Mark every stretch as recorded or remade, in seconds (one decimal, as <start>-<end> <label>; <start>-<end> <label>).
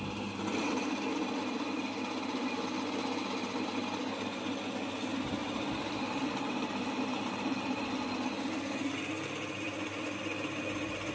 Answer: 0.0-5.4 recorded; 5.4-7.9 remade; 7.9-11.1 recorded